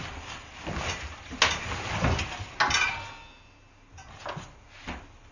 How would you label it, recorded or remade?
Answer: recorded